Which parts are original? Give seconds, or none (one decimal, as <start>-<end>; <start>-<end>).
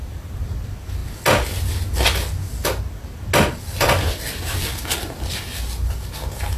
0.0-6.6